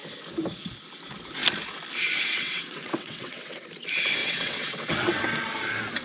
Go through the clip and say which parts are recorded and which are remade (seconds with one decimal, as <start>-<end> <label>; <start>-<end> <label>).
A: 0.0-2.4 recorded; 2.4-3.6 remade; 3.6-4.2 recorded; 4.2-5.2 remade; 5.2-6.0 recorded